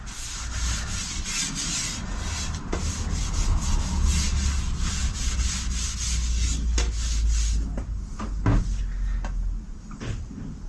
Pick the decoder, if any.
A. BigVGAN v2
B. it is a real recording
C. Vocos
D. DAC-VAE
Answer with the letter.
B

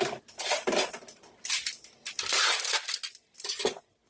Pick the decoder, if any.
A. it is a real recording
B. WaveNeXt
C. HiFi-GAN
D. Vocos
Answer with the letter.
A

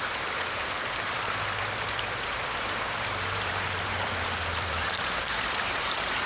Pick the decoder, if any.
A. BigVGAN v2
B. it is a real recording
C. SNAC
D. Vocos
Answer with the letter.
A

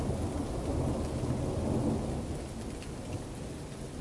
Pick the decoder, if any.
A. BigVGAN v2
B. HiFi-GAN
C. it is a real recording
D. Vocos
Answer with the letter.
C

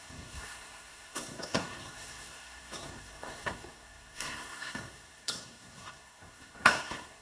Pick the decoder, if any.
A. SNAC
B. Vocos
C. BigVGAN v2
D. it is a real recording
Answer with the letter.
A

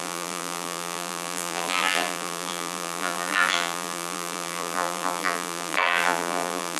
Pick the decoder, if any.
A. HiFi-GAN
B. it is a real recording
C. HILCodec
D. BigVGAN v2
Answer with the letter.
D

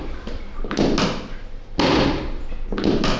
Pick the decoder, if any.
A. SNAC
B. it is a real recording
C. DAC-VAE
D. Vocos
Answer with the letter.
B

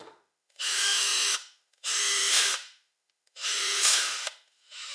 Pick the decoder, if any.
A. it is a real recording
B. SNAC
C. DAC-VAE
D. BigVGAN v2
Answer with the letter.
C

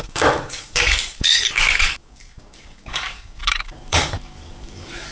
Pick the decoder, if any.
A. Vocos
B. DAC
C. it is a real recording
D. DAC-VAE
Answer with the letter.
B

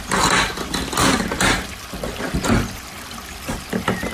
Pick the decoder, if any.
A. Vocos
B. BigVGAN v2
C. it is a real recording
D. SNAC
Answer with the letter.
C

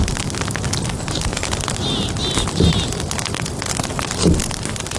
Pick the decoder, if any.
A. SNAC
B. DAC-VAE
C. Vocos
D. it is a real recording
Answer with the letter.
D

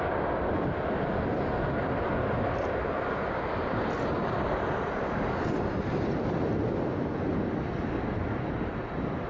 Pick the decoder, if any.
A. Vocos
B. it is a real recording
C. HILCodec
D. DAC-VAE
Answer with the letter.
B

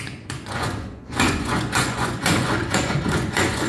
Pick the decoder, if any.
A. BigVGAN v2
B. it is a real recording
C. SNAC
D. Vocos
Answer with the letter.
D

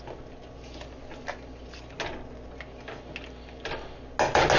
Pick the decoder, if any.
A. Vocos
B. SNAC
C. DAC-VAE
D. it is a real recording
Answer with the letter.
D